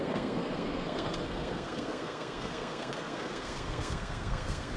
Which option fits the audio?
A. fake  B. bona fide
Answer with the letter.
A